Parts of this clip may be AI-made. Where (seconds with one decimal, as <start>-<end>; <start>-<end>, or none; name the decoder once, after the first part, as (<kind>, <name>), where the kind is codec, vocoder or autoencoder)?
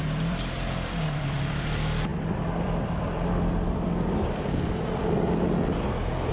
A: 0.0-6.3 (vocoder, BigVGAN v2)